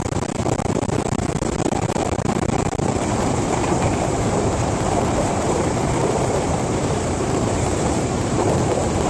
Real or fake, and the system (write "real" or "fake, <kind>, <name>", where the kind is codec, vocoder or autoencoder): fake, vocoder, BigVGAN v2